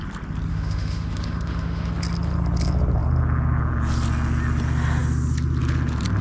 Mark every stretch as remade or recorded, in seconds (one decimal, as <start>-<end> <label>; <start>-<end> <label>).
0.0-0.5 recorded; 0.5-1.9 remade; 1.9-6.2 recorded